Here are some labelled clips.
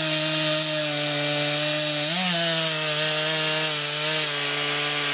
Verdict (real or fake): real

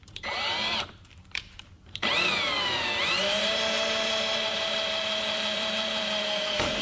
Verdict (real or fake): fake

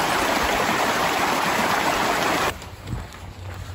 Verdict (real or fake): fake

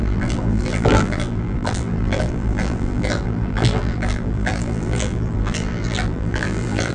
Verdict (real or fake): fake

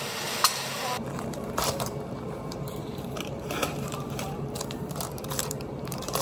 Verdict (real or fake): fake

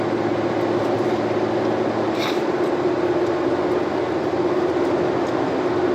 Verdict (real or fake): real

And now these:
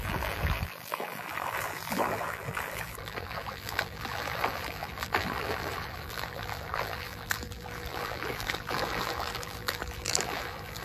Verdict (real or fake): fake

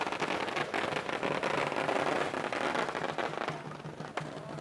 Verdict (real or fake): real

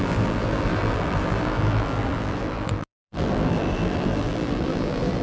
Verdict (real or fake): fake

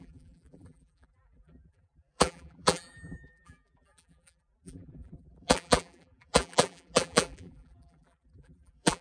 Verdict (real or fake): fake